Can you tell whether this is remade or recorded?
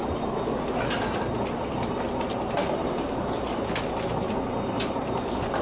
recorded